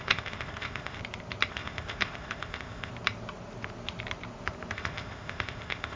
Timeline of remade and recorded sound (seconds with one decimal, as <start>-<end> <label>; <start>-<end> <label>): 0.0-1.0 remade; 1.0-1.5 recorded; 1.5-2.9 remade; 2.9-4.7 recorded; 4.7-6.0 remade